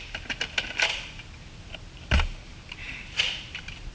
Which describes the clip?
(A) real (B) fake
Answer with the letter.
A